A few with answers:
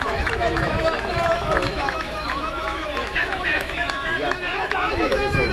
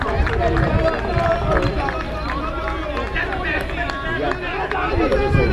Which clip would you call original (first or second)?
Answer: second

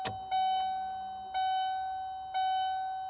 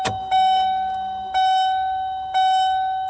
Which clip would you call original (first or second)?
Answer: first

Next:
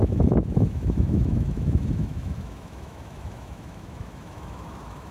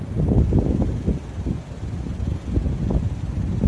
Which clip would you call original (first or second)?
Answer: second